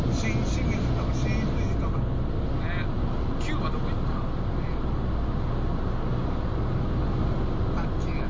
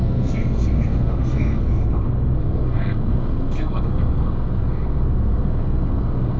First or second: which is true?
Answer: first